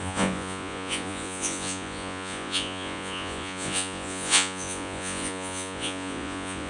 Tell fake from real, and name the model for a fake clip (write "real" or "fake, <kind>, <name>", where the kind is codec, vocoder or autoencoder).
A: fake, vocoder, Vocos